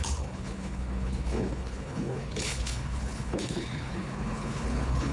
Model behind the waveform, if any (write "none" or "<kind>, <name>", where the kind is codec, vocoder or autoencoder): codec, HILCodec